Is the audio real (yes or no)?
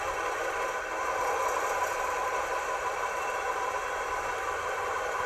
yes